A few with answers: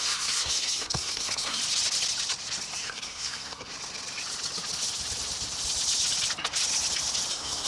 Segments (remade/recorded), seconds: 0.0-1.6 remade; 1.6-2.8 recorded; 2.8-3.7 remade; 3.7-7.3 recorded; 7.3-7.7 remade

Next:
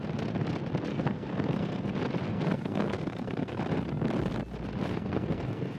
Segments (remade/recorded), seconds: 0.0-0.9 recorded; 0.9-1.9 remade; 1.9-2.3 recorded; 2.3-3.6 remade; 3.6-4.9 recorded; 4.9-5.8 remade